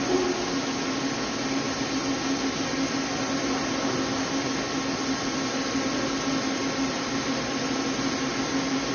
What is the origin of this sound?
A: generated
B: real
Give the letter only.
B